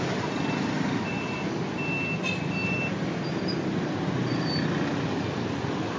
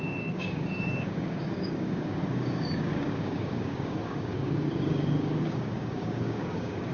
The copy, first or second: second